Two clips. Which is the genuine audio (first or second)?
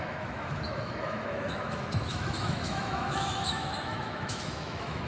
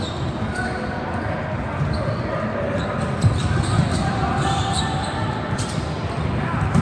second